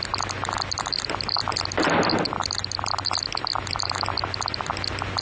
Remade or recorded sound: recorded